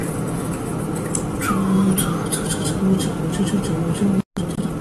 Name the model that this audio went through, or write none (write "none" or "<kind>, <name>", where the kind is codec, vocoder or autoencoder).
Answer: none